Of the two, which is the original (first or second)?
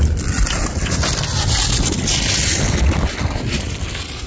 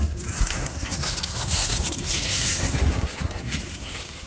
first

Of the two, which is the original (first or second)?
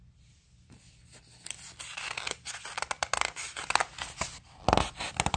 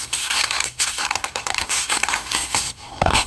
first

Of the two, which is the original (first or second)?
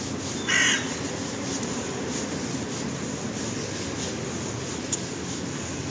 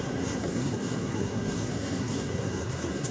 first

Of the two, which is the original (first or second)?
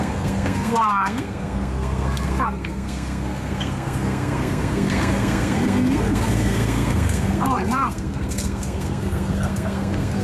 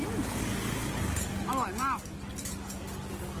second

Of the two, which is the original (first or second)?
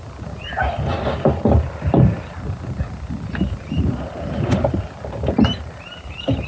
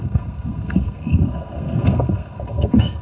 first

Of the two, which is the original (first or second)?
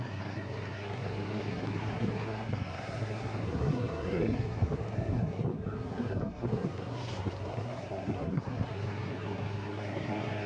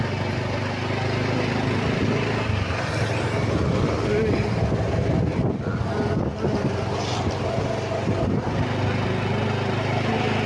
second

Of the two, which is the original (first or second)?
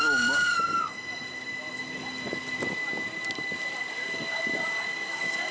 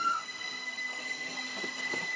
first